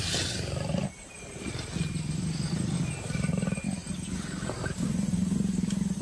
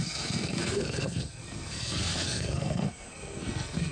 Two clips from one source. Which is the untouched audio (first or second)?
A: first